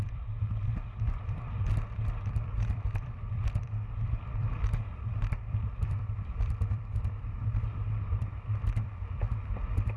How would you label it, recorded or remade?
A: remade